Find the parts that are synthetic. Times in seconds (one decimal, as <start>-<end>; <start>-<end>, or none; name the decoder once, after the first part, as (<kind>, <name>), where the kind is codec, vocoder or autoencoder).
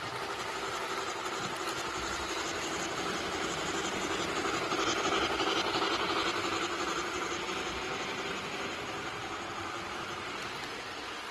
none